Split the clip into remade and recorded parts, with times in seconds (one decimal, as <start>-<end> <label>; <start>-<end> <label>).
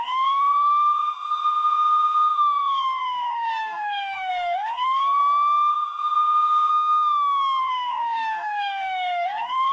0.0-5.2 remade; 5.2-5.7 recorded; 5.7-6.7 remade; 6.7-7.6 recorded; 7.6-9.7 remade